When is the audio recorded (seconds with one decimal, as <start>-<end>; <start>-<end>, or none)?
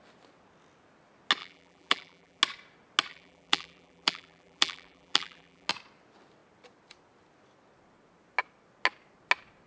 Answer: 0.0-1.4; 2.4-3.1; 5.7-9.7